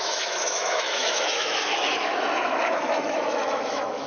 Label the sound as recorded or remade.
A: remade